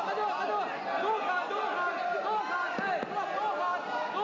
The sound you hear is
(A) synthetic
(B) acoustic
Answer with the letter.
B